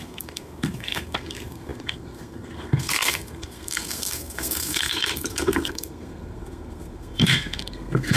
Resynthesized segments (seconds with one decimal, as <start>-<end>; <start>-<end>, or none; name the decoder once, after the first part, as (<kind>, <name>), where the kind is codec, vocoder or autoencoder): 0.0-8.2 (codec, SNAC)